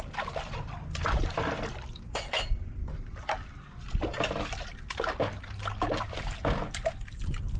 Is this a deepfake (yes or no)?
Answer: no